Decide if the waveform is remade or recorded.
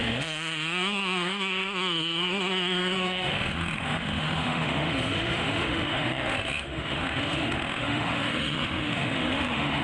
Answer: remade